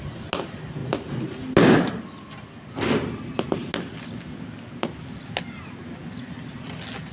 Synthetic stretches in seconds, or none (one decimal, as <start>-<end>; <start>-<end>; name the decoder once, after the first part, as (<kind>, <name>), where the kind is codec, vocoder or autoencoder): none